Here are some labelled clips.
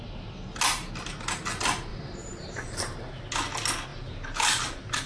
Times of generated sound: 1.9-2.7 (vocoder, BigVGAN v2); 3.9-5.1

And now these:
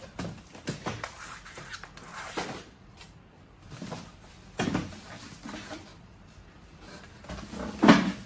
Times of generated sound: 2.1-4.3 (vocoder, BigVGAN v2); 5.9-7.1

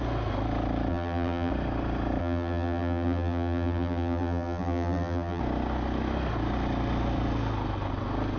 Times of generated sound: 0.9-1.5 (vocoder, BigVGAN v2); 2.2-5.4

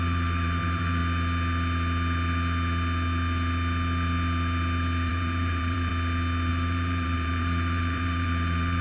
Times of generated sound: 0.0-1.0 (vocoder, BigVGAN v2); 5.1-5.9; 6.5-8.8

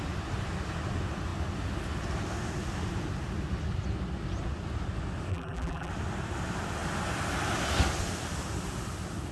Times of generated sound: 5.3-5.9 (vocoder, BigVGAN v2)

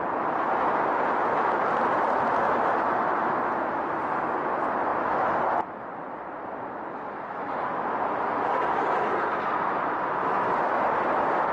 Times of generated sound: none